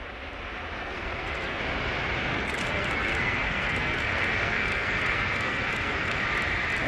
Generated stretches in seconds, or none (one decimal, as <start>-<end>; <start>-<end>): 0.8-1.6; 2.3-6.2